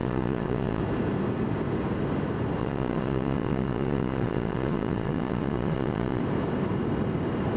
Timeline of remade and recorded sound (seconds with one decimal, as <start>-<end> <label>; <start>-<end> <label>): 0.0-0.8 remade; 0.8-2.6 recorded; 2.6-6.2 remade; 6.2-7.6 recorded

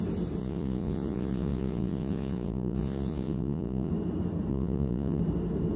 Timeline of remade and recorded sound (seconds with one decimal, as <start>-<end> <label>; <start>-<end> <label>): 0.0-0.4 recorded; 0.4-3.9 remade; 3.9-4.5 recorded; 4.5-5.2 remade; 5.2-5.8 recorded

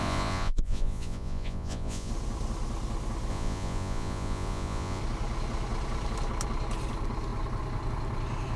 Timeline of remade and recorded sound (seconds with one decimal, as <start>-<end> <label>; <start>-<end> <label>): 0.0-2.1 remade; 2.1-3.3 recorded; 3.3-5.0 remade; 5.0-8.6 recorded